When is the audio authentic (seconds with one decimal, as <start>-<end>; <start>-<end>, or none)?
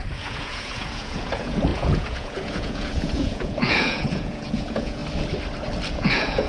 5.0-5.9